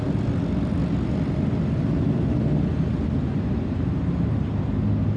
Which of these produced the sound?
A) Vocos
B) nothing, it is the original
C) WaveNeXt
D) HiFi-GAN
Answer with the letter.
B